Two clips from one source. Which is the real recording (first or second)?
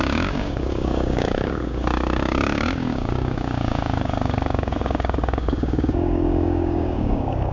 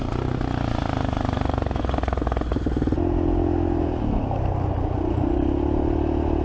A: second